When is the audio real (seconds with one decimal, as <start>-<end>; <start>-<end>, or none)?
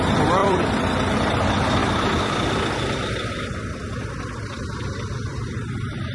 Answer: 0.0-0.4; 1.1-1.8; 5.5-6.1